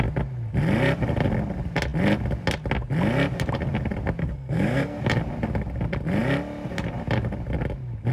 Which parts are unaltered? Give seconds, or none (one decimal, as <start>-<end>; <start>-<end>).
0.0-4.2; 5.0-8.1